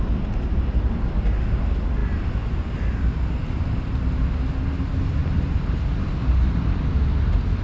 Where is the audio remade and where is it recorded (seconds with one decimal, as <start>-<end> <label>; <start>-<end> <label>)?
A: 0.0-7.6 recorded

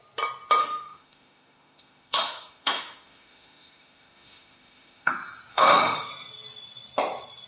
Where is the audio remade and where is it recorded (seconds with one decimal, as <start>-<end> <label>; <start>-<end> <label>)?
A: 0.0-0.6 recorded; 0.6-5.1 remade; 5.1-5.5 recorded; 5.5-6.1 remade; 6.1-7.5 recorded

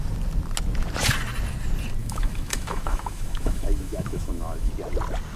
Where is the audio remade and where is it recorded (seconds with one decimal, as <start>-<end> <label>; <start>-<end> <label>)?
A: 0.0-2.0 recorded; 2.0-4.7 remade; 4.7-5.4 recorded